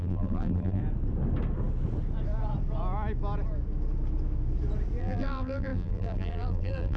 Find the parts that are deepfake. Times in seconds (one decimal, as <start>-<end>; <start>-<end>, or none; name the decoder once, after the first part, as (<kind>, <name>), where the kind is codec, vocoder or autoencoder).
0.0-0.8 (vocoder, BigVGAN v2); 5.0-7.0